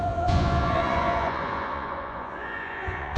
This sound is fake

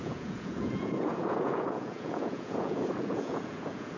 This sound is fake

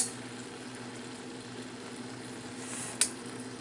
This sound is real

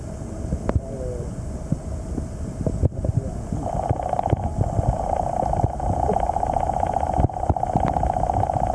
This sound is real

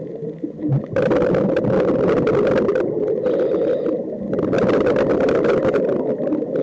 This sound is real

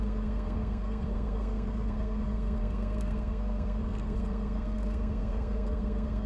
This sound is fake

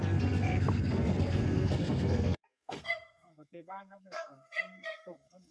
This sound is fake